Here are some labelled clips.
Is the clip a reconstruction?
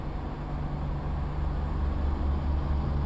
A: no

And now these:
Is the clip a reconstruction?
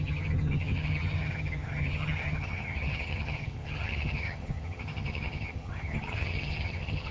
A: yes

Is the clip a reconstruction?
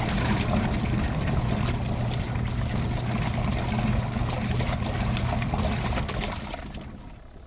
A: no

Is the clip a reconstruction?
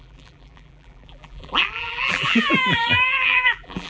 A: yes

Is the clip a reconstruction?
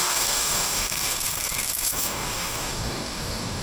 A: yes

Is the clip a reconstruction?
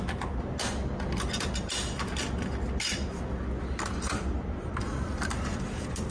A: no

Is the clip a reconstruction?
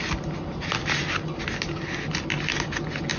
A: no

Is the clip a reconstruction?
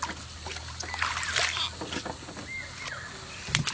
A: no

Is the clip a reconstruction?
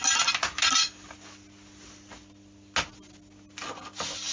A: no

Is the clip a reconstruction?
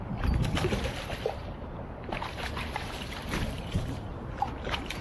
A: yes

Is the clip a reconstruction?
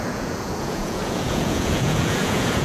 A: yes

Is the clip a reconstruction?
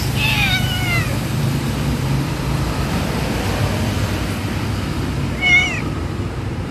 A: yes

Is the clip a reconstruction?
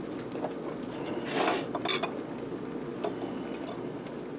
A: no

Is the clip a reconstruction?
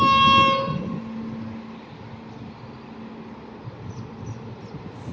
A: no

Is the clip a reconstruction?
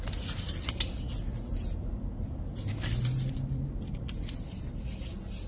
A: no